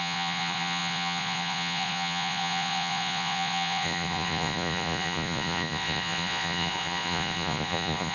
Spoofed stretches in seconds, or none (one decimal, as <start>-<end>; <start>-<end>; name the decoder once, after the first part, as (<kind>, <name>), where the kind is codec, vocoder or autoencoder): 0.0-8.1 (vocoder, Vocos)